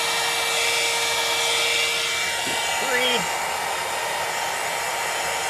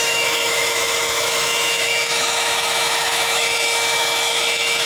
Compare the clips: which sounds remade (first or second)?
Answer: second